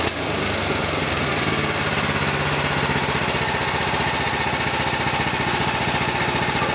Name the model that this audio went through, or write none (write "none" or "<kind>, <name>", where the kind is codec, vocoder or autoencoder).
none